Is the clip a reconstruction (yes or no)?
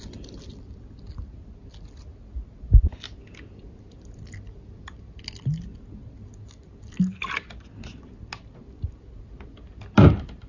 no